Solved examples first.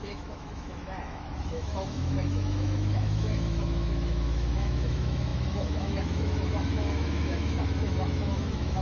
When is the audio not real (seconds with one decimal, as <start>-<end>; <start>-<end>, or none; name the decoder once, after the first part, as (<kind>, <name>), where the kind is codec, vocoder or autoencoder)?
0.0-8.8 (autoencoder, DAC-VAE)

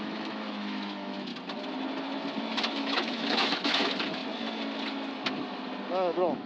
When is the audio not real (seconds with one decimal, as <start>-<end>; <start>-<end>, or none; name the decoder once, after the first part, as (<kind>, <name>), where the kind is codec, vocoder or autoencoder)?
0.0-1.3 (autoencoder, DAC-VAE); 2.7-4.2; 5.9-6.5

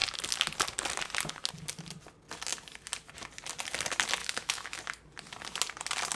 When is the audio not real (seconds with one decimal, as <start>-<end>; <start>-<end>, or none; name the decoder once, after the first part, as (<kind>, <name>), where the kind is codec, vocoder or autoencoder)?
4.2-4.8 (autoencoder, DAC-VAE)

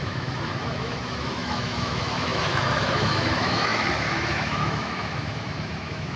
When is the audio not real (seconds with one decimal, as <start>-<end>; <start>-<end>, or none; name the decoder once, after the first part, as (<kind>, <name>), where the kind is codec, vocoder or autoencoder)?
0.0-6.2 (autoencoder, DAC-VAE)

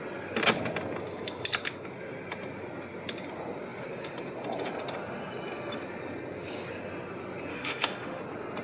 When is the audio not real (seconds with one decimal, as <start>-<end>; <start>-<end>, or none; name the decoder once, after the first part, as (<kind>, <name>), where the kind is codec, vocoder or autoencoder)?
7.5-8.2 (autoencoder, DAC-VAE)

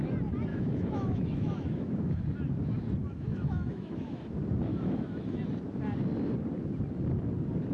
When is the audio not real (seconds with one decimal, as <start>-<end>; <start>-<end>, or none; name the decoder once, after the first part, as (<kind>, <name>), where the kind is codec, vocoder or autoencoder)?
0.5-2.2 (autoencoder, DAC-VAE); 3.0-4.2; 4.7-5.4

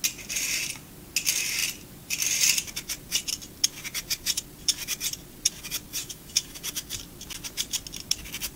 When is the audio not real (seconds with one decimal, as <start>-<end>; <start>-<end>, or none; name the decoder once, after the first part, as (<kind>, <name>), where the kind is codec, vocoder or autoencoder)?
6.0-6.6 (autoencoder, DAC-VAE)

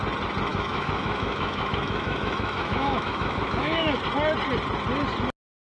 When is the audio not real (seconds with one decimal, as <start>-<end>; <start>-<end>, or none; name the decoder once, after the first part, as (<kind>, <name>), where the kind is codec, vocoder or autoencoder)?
0.5-3.9 (autoencoder, DAC-VAE)